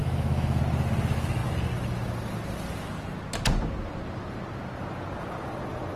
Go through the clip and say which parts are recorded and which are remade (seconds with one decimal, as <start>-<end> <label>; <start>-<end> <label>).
0.0-0.6 remade; 0.6-6.0 recorded